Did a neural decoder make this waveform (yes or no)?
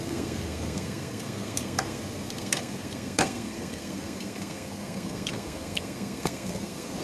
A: yes